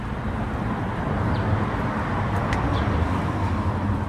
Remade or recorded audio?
recorded